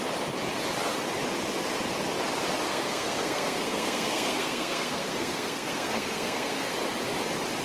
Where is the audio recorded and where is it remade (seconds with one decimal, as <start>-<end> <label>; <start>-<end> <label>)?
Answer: 0.0-2.7 recorded; 2.7-6.7 remade; 6.7-7.6 recorded